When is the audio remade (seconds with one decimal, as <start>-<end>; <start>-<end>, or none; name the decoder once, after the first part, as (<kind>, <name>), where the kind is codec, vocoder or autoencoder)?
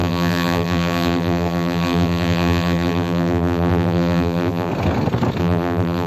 0.0-4.7 (vocoder, BigVGAN v2); 5.4-6.1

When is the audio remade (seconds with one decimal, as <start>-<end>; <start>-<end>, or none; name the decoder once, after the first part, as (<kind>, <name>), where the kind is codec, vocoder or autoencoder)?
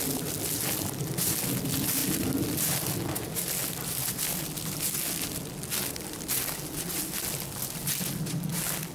none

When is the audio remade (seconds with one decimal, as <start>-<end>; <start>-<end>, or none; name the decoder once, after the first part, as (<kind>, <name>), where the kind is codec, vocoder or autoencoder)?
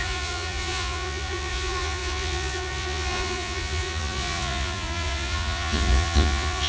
0.0-6.7 (vocoder, Vocos)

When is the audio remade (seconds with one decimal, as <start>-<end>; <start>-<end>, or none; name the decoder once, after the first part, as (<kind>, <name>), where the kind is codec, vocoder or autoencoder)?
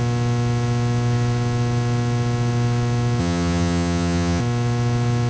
3.2-4.4 (vocoder, HiFi-GAN)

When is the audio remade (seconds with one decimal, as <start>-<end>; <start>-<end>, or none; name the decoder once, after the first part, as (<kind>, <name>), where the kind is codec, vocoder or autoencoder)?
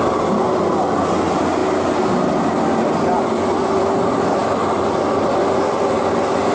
none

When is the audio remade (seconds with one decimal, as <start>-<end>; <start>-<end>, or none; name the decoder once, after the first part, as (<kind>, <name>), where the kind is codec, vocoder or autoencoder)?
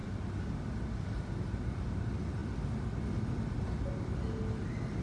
none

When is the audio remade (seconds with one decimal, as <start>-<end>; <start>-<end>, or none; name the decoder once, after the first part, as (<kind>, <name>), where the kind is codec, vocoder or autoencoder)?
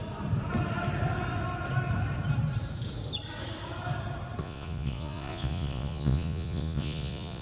4.4-7.4 (vocoder, Vocos)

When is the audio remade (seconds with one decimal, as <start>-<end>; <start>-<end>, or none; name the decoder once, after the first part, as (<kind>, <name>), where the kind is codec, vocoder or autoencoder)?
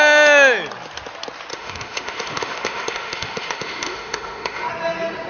1.5-4.7 (autoencoder, DAC-VAE)